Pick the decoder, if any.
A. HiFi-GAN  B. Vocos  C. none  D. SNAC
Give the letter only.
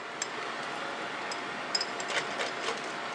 C